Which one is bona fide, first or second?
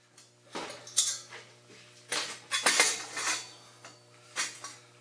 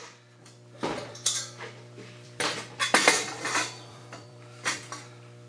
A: first